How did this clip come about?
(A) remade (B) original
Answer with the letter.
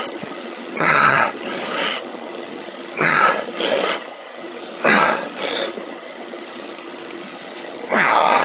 A